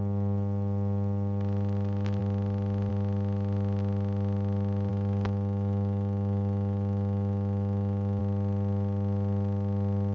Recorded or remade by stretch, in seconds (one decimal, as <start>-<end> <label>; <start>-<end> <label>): 0.0-4.9 recorded; 4.9-8.2 remade; 8.2-10.1 recorded